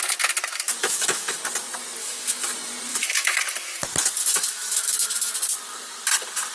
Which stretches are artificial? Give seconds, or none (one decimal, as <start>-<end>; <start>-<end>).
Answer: 0.8-1.4; 2.0-2.5; 2.9-3.4; 4.2-5.3